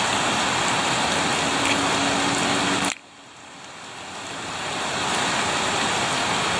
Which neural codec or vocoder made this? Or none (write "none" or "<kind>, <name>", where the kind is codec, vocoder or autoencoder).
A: none